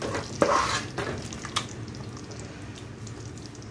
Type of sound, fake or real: real